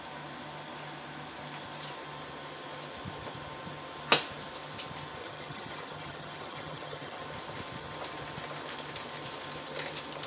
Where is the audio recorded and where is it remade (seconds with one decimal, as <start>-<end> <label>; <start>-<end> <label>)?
0.0-5.2 recorded; 5.2-7.2 remade; 7.2-10.3 recorded